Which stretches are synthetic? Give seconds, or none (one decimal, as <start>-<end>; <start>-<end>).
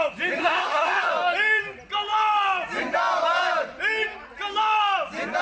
0.4-1.1